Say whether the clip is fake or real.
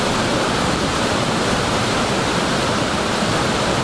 fake